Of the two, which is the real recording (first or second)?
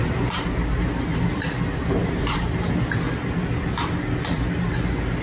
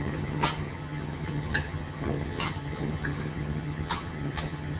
first